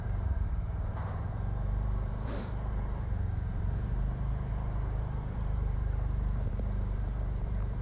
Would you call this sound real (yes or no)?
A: no